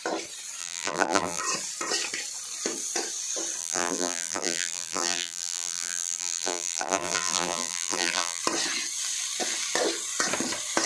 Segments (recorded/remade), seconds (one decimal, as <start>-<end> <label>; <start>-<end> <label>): 0.0-0.6 recorded; 0.6-1.4 remade; 1.4-3.6 recorded; 3.6-8.4 remade; 8.4-10.9 recorded